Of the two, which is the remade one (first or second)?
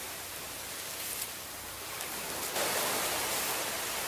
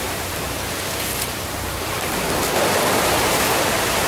second